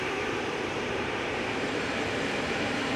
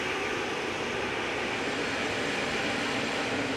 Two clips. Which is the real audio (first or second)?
second